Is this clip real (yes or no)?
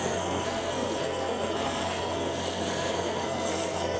no